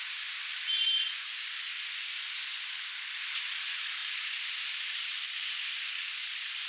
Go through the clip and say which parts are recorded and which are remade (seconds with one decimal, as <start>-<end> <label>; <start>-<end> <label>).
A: 0.0-6.7 recorded